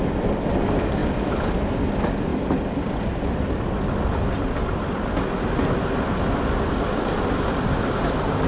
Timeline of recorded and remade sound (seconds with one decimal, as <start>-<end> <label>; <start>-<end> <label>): 0.0-8.5 recorded